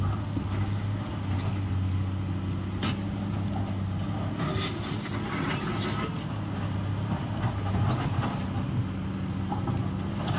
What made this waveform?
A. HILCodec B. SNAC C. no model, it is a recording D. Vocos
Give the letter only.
C